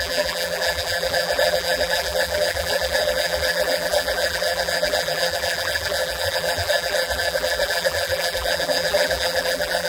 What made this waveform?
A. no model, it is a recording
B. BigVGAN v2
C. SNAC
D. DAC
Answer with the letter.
B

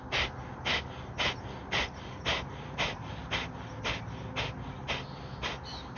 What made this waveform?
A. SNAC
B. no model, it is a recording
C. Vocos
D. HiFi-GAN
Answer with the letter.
B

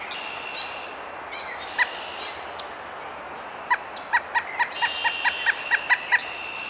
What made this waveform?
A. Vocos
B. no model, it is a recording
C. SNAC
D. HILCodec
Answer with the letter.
B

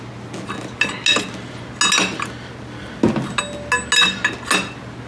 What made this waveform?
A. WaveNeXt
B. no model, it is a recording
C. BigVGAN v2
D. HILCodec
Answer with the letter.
B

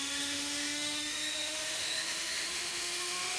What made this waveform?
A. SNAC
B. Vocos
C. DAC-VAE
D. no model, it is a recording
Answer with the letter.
C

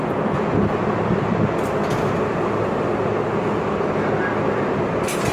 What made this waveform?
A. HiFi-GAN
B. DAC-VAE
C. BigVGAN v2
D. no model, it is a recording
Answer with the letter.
D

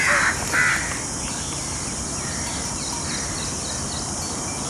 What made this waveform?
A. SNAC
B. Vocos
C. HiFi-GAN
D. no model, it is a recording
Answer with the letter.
D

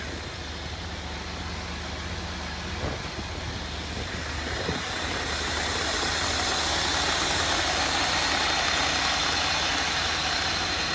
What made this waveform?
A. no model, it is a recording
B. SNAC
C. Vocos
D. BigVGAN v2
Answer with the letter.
A